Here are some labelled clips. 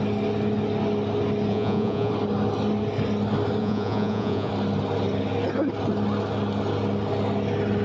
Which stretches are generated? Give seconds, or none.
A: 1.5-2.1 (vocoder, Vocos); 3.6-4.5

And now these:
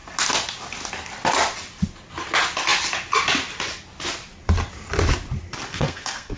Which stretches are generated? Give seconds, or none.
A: 5.7-6.4 (codec, SNAC)

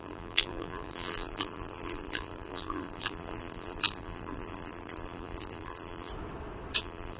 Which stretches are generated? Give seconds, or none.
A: 0.0-6.1 (vocoder, BigVGAN v2); 6.8-7.2

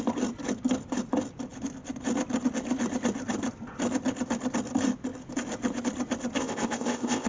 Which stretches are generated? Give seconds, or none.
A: 6.4-7.3 (codec, ZipCodec)

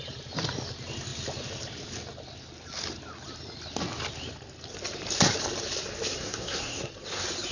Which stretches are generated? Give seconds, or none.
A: 6.2-6.9 (codec, SNAC)